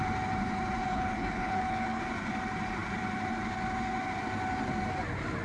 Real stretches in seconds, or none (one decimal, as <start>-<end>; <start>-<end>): 0.0-0.9; 2.0-5.4